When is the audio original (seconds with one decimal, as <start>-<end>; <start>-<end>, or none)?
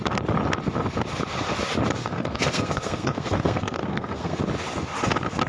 0.0-2.0; 4.4-5.5